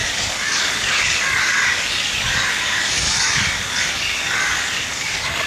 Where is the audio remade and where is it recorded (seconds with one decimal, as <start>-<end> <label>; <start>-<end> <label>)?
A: 0.0-5.5 remade